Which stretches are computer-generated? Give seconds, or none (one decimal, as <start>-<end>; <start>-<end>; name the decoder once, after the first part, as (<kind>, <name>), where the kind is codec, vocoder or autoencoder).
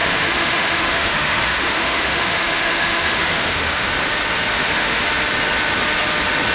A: 0.0-3.9 (autoencoder, DAC-VAE); 4.5-5.1